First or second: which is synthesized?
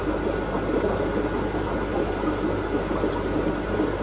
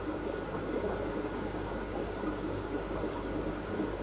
second